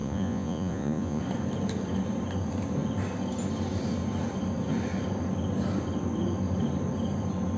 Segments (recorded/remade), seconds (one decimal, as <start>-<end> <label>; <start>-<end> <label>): 0.0-1.2 remade; 1.2-7.6 recorded